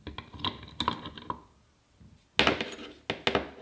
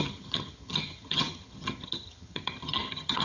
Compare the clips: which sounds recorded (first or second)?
first